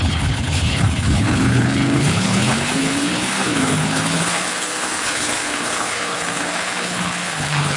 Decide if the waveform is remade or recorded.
remade